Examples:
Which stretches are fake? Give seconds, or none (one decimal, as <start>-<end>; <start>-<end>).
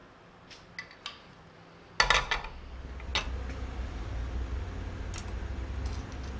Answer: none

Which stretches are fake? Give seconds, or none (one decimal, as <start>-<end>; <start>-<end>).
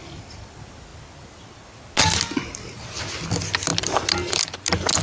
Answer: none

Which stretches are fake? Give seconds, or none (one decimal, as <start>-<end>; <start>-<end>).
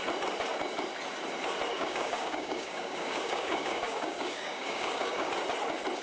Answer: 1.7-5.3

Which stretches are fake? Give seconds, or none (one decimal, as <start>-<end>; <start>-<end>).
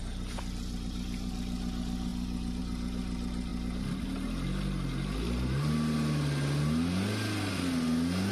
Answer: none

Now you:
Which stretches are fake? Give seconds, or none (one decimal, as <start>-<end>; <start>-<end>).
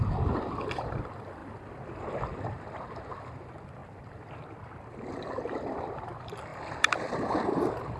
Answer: 0.0-8.0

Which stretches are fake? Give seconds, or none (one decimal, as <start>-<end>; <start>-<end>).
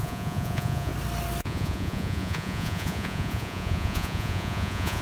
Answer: 0.0-0.9; 1.4-5.0